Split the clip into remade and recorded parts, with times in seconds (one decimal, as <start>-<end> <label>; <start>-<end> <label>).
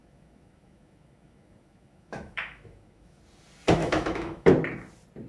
0.0-3.2 remade; 3.2-3.8 recorded; 3.8-4.5 remade; 4.5-5.3 recorded